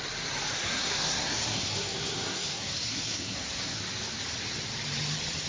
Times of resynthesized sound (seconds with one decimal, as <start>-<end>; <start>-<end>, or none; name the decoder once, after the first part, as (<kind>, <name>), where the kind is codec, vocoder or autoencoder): 0.6-3.8 (codec, SNAC)